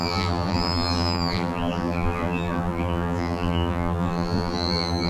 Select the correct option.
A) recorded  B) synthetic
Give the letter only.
B